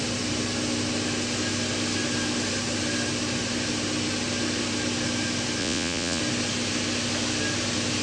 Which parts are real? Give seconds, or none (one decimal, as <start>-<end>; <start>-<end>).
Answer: 0.0-5.6; 6.2-8.0